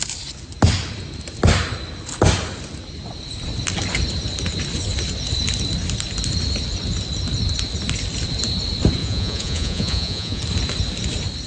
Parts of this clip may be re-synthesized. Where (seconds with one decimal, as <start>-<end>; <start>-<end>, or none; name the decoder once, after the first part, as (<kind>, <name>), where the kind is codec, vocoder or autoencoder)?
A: 9.0-10.4 (vocoder, Vocos)